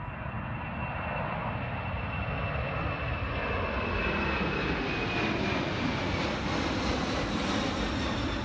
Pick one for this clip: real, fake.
real